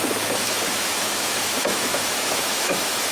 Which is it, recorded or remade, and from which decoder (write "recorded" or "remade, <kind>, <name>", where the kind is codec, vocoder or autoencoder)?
remade, autoencoder, DAC-VAE